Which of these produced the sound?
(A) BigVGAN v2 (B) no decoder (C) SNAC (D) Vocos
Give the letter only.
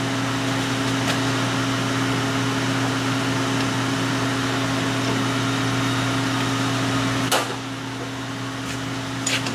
B